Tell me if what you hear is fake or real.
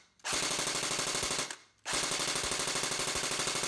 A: real